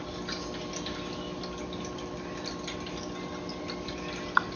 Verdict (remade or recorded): recorded